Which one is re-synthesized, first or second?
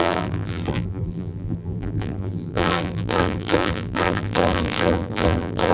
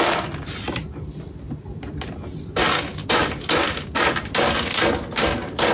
first